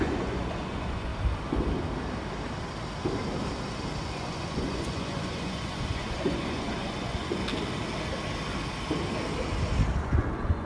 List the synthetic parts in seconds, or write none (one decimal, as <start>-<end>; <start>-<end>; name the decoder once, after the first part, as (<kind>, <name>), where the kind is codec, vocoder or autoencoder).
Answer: 0.0-1.1 (vocoder, Vocos); 4.0-7.5; 10.0-10.7